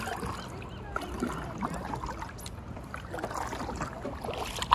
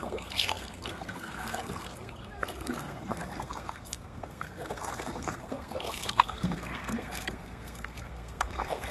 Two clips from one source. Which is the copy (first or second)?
second